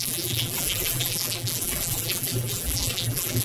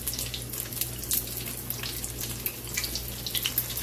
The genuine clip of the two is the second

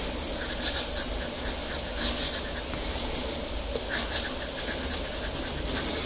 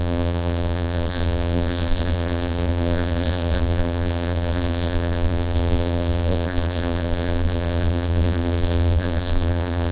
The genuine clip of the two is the first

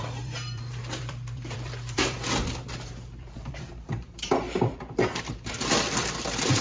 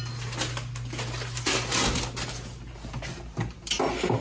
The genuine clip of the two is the second